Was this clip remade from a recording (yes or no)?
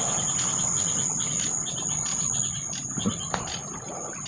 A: no